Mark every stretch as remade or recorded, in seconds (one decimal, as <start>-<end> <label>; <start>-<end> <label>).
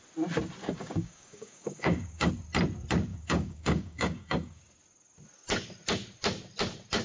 0.0-0.6 recorded; 0.6-2.3 remade; 2.3-3.1 recorded; 3.1-4.6 remade; 4.6-7.0 recorded